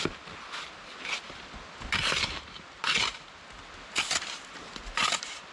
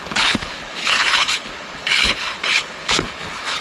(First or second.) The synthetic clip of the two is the second